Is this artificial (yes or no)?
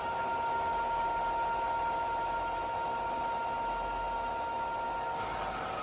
no